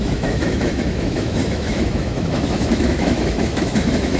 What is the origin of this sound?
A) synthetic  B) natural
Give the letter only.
A